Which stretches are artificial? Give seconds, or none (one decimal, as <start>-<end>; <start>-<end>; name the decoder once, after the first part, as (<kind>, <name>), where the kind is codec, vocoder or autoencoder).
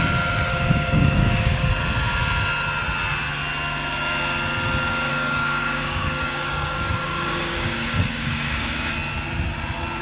0.5-1.7 (codec, DAC); 5.1-8.9